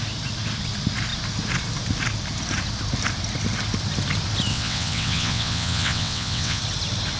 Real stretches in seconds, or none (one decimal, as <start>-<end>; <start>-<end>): 0.0-4.5; 6.6-7.2